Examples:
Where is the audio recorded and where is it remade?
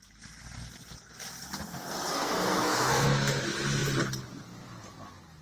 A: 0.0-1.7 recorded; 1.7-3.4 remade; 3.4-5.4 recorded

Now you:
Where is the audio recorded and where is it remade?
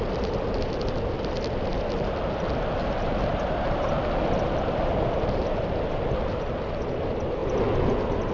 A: 0.0-8.3 recorded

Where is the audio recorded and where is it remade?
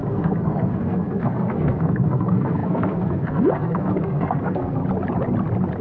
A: 0.0-4.8 remade; 4.8-5.8 recorded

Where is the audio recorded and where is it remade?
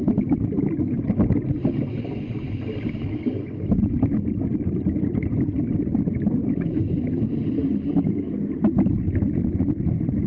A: 0.0-10.3 recorded